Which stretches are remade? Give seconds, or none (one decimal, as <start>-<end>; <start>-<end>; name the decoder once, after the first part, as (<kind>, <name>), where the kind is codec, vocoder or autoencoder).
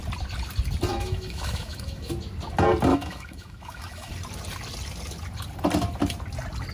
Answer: 0.9-2.1 (autoencoder, DAC-VAE); 2.9-4.1